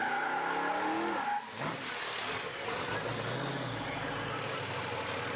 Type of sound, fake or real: real